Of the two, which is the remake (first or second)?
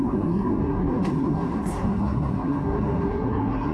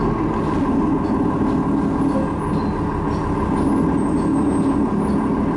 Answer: first